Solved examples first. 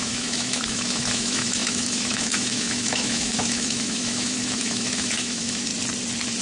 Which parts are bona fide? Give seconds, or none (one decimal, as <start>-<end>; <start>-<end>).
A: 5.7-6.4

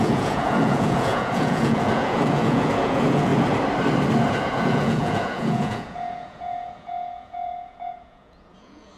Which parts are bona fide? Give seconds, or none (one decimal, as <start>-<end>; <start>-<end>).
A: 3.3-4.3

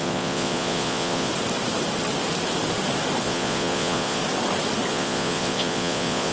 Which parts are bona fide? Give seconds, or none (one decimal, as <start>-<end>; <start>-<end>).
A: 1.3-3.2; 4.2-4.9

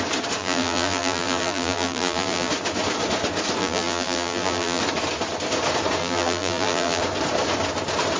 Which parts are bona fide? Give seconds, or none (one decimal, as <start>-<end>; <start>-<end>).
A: 0.0-0.4; 2.5-3.6; 4.8-6.0; 7.0-8.2